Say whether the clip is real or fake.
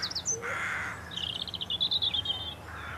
real